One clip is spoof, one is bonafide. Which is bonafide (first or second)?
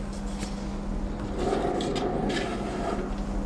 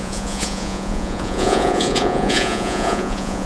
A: first